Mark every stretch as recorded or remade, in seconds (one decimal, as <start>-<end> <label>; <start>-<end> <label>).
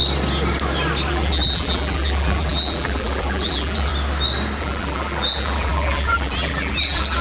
0.0-1.1 recorded; 1.1-3.9 remade; 3.9-4.6 recorded; 4.6-7.2 remade